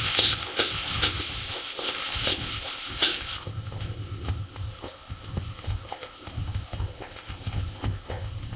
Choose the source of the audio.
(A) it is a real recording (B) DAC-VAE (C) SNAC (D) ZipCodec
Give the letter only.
D